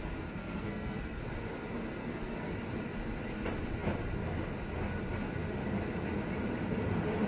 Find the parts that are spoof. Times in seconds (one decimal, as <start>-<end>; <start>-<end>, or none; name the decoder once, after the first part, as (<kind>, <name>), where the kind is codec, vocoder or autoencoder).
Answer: 0.4-1.2 (codec, SNAC); 2.0-2.5